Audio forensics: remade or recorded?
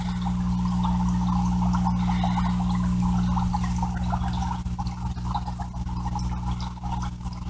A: recorded